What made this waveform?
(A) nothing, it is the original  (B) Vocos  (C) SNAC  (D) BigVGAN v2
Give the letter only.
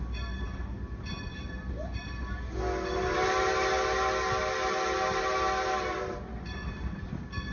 A